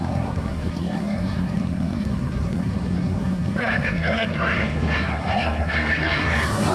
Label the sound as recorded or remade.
remade